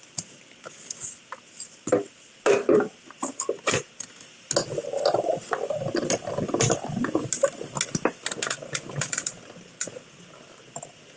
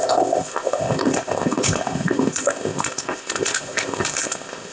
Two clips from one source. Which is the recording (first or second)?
first